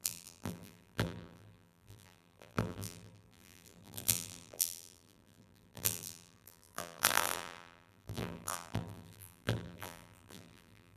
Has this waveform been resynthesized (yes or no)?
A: yes